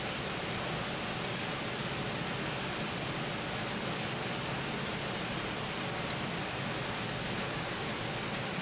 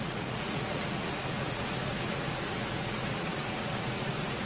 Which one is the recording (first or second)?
first